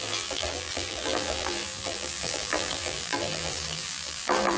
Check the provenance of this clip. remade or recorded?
remade